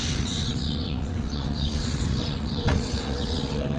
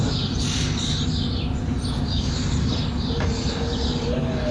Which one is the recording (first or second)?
second